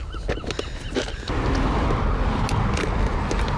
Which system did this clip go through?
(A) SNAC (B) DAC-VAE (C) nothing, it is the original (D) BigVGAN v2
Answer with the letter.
C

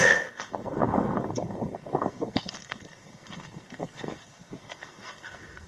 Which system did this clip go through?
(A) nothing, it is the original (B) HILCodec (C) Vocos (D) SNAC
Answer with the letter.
D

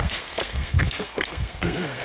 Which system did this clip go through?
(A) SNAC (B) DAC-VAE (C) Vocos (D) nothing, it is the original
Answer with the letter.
A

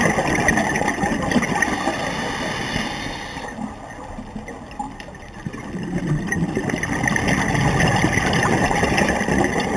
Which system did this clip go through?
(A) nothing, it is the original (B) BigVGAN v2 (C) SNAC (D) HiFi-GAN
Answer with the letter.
A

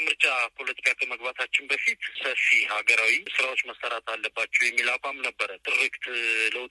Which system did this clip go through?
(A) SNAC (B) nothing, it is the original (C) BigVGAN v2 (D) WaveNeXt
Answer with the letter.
B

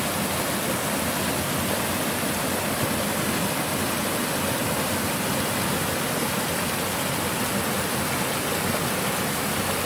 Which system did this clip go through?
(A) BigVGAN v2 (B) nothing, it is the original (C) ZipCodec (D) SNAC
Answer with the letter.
B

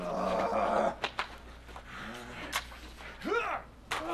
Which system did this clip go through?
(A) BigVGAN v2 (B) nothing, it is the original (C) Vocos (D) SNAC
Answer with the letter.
B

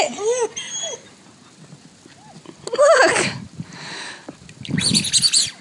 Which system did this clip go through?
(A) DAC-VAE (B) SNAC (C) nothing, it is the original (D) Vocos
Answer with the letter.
C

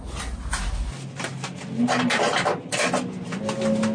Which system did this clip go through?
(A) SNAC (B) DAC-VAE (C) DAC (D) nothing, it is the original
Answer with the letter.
D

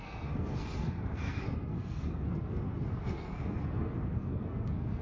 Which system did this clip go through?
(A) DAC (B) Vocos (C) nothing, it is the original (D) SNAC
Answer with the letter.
D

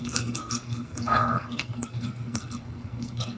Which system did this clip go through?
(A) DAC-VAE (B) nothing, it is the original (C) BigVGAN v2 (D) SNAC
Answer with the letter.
D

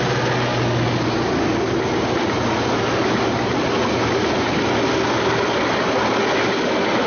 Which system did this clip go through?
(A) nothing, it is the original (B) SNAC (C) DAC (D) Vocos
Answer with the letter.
A